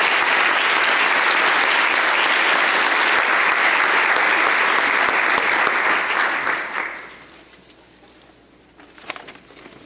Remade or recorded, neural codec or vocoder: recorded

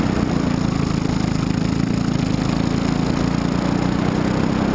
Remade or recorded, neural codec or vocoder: recorded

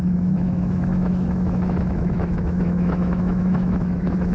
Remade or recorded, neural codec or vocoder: remade, autoencoder, DAC-VAE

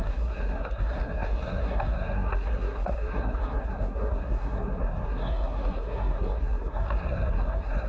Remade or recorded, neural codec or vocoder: remade, codec, SNAC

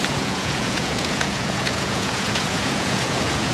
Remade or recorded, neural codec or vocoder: remade, vocoder, Vocos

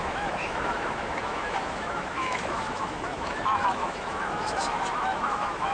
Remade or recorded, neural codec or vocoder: remade, autoencoder, DAC-VAE